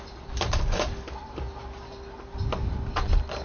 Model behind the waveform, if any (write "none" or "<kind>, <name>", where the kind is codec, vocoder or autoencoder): none